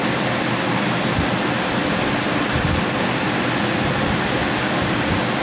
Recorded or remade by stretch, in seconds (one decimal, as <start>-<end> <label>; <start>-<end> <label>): 0.0-5.4 recorded